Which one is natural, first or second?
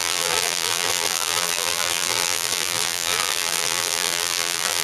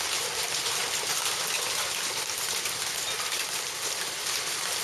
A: second